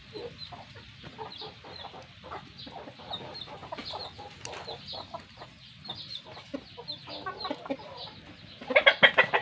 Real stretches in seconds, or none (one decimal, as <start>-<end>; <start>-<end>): 0.0-9.4